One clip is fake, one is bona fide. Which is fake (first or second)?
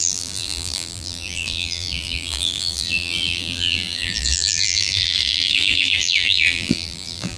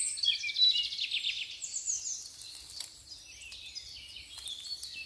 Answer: first